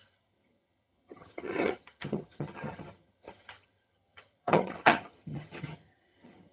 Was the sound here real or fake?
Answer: fake